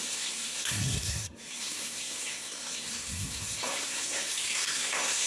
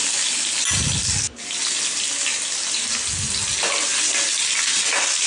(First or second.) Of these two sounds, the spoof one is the first